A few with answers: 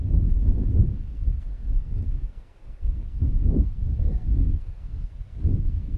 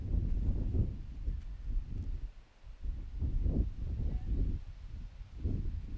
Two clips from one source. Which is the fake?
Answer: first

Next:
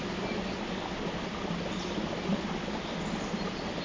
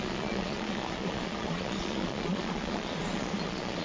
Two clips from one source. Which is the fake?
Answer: second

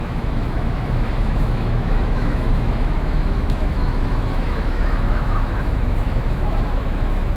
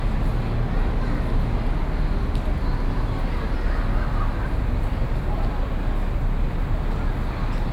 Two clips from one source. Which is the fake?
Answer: first